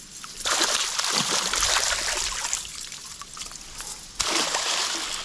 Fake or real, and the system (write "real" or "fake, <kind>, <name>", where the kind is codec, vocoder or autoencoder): real